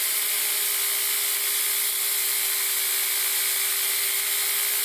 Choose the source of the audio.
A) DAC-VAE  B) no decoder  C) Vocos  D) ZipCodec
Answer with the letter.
B